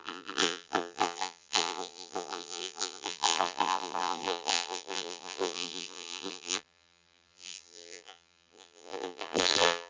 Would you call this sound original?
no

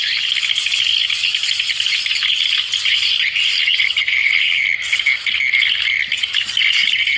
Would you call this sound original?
yes